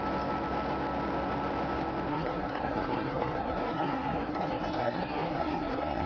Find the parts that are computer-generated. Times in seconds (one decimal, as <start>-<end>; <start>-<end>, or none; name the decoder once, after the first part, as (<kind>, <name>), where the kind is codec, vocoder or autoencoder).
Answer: 2.1-6.1 (codec, SNAC)